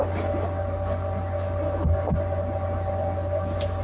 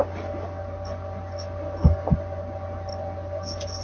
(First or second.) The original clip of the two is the second